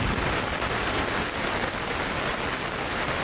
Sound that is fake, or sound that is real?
real